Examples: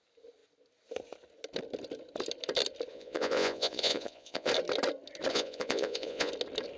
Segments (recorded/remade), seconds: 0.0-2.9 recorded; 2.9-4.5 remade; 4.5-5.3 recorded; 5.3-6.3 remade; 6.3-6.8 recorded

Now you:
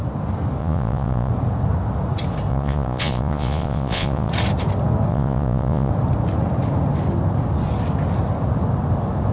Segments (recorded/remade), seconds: 0.0-0.6 recorded; 0.6-1.3 remade; 1.3-2.5 recorded; 2.5-4.3 remade; 4.3-5.1 recorded; 5.1-5.9 remade; 5.9-9.3 recorded

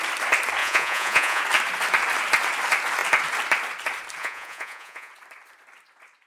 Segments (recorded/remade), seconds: 0.0-0.6 recorded; 0.6-1.4 remade; 1.4-4.2 recorded; 4.2-5.1 remade; 5.1-6.3 recorded

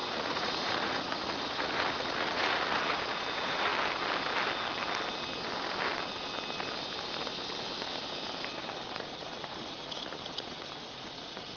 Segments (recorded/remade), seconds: 0.0-3.7 remade; 3.7-8.9 recorded; 8.9-11.6 remade